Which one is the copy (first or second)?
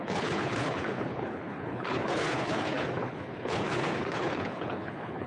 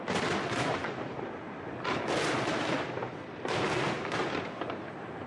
first